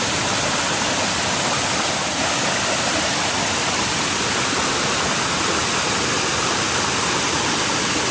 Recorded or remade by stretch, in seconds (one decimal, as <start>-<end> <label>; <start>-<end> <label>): 0.0-8.1 recorded